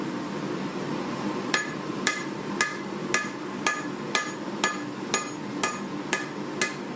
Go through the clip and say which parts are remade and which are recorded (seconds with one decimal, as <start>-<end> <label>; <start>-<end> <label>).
0.0-0.7 recorded; 0.7-2.6 remade; 2.6-7.0 recorded